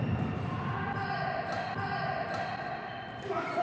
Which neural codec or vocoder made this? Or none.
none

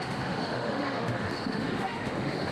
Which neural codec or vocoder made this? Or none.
autoencoder, DAC-VAE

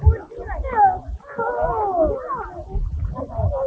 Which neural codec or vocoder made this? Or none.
none